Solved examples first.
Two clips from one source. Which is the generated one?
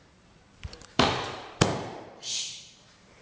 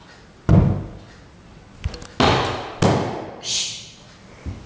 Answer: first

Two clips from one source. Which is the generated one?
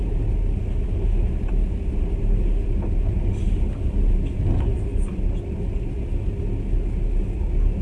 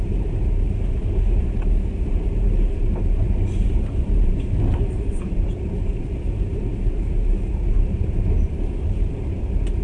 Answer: second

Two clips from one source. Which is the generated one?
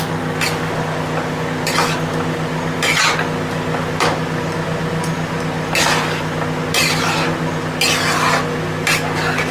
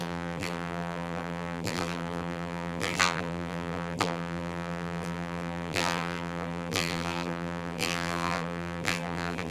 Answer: second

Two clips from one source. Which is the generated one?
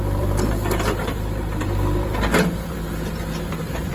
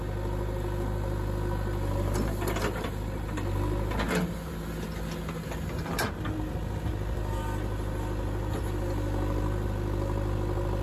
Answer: first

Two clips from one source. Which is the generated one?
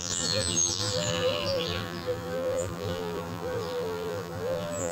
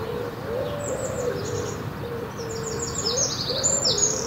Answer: first